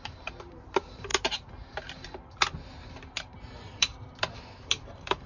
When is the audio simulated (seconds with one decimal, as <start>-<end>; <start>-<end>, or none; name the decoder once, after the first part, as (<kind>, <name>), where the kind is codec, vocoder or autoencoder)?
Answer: 0.0-5.3 (vocoder, BigVGAN v2)